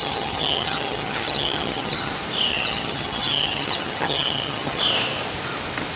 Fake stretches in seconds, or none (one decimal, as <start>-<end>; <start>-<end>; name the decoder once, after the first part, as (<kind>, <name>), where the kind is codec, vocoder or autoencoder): 0.0-2.1 (vocoder, HiFi-GAN); 2.5-4.8